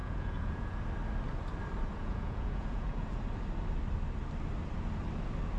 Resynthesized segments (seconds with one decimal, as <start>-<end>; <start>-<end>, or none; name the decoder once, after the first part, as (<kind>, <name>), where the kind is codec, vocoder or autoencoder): 0.0-0.8 (vocoder, Vocos); 1.9-3.2